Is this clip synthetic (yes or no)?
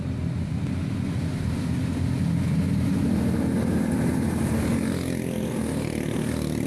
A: no